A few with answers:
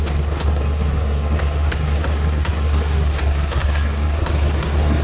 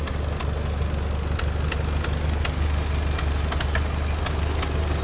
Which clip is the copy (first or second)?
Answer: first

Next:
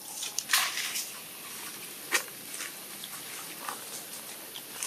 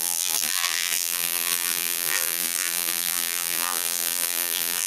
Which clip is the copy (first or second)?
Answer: second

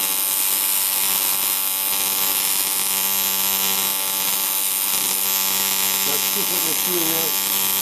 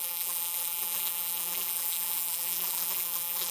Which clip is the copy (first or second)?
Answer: second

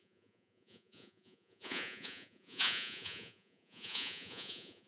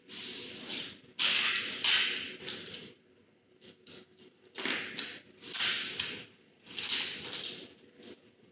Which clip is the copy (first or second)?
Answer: first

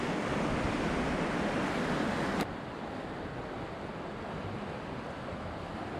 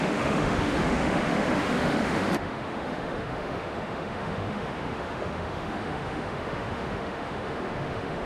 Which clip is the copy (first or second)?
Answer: second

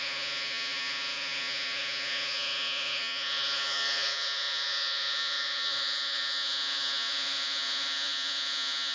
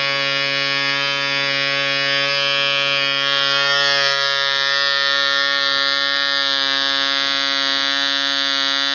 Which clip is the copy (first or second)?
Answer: first